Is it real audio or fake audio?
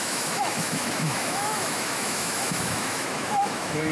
fake